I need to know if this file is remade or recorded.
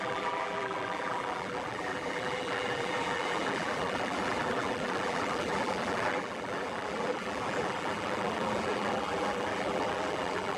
remade